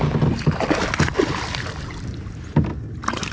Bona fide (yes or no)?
yes